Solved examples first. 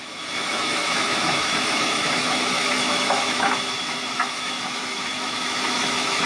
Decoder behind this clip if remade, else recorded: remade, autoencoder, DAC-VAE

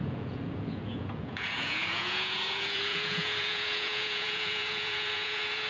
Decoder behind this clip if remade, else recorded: remade, vocoder, Vocos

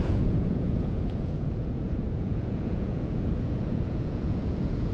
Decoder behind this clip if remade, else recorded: remade, vocoder, Vocos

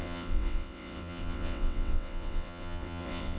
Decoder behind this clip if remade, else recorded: remade, vocoder, WaveNeXt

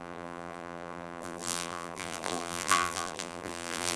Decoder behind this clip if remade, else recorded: remade, vocoder, BigVGAN v2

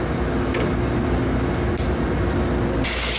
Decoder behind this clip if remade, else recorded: recorded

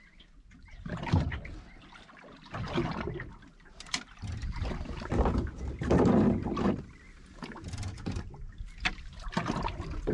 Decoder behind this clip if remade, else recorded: recorded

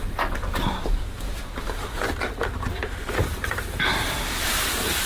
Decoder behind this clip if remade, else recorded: remade, vocoder, BigVGAN v2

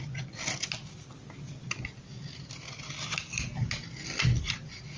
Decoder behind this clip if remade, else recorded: recorded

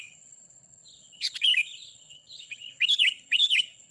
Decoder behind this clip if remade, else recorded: remade, codec, HILCodec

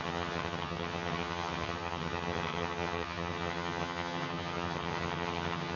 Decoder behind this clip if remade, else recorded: remade, vocoder, HiFi-GAN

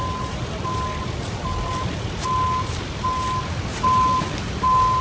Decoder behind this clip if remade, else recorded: recorded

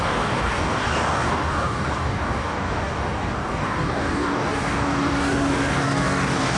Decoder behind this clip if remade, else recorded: remade, codec, DAC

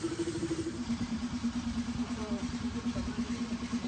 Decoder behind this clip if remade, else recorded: remade, vocoder, BigVGAN v2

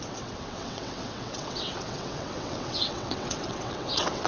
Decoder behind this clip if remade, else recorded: remade, vocoder, WaveNeXt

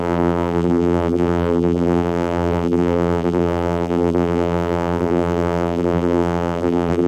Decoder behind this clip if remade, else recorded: remade, vocoder, BigVGAN v2